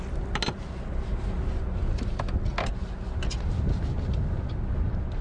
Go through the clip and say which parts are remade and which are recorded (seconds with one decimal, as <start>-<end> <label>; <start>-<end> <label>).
0.0-5.2 recorded